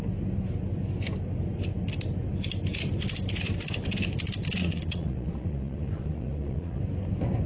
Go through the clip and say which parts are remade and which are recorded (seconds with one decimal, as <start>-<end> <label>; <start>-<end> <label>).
0.0-4.6 recorded; 4.6-6.8 remade; 6.8-7.5 recorded